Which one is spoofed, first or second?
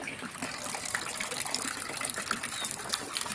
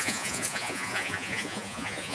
second